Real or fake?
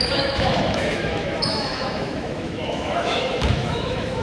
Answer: fake